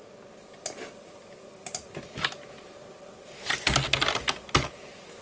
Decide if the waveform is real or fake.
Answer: real